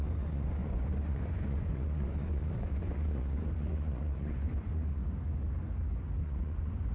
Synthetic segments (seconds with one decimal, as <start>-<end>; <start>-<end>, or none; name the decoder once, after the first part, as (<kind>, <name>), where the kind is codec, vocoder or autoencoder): 0.0-5.0 (vocoder, Vocos); 6.2-6.9